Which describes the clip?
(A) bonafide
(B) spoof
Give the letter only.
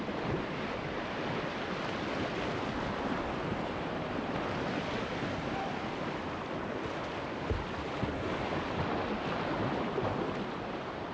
A